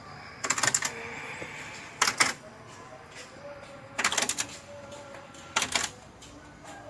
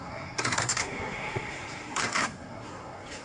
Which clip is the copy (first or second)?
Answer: second